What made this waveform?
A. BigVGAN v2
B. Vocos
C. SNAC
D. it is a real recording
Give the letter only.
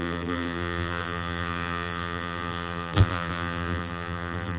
A